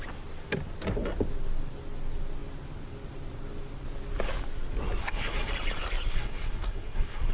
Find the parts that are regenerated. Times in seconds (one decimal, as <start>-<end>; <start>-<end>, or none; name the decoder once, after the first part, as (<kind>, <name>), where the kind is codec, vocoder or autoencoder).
5.0-5.5 (codec, SNAC); 6.1-7.3